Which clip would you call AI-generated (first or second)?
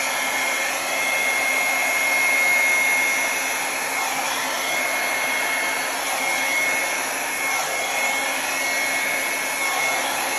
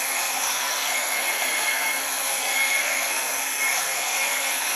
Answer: second